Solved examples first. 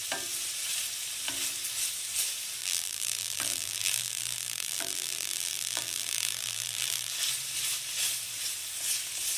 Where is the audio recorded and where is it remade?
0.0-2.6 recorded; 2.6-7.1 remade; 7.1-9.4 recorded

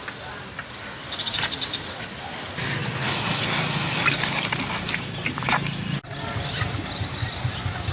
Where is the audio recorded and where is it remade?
0.0-7.9 recorded

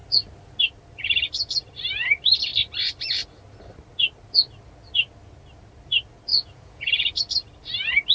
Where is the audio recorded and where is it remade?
0.0-6.3 recorded; 6.3-7.2 remade; 7.2-8.1 recorded

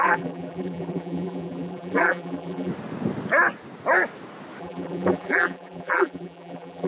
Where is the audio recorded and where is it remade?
0.0-2.7 remade; 2.7-4.6 recorded; 4.6-6.9 remade

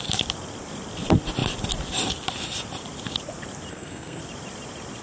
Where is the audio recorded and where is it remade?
0.0-3.7 recorded; 3.7-4.2 remade; 4.2-5.0 recorded

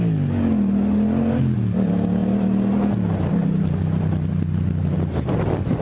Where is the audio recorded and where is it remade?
0.0-5.8 recorded